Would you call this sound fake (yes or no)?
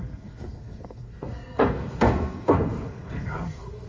yes